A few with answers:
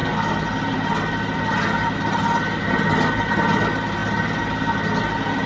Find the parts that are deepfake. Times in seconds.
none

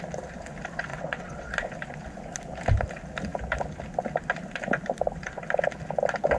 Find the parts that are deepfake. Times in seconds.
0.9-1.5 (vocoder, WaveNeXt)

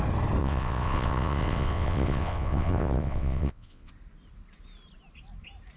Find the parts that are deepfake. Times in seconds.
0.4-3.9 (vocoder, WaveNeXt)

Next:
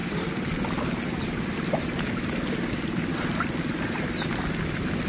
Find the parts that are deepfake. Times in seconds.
none

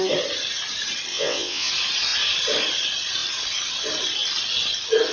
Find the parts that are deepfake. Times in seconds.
1.1-1.7 (vocoder, WaveNeXt)